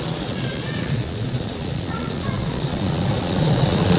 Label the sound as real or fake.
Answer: fake